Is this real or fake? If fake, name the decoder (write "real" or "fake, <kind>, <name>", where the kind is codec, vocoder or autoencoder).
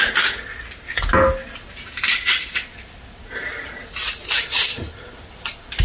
real